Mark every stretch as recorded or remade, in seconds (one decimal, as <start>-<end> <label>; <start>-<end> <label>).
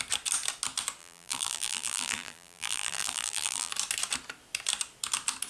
0.0-1.0 recorded; 1.0-3.7 remade; 3.7-5.5 recorded